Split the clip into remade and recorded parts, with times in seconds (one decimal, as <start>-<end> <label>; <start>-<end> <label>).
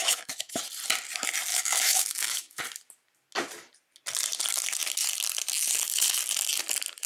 0.0-0.6 remade; 0.6-1.5 recorded; 1.5-2.6 remade; 2.6-7.1 recorded